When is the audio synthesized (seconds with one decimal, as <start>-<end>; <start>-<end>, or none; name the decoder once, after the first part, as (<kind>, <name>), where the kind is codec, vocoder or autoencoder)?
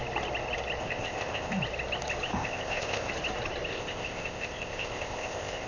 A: 0.8-1.6 (codec, ZipCodec); 2.3-3.1; 3.7-5.7